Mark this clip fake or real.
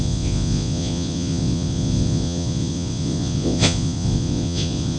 fake